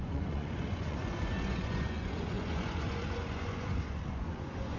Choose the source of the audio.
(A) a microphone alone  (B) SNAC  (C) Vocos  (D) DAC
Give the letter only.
C